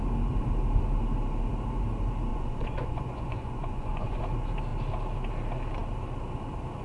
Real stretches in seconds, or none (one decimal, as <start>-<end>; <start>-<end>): 0.0-2.3; 4.2-6.8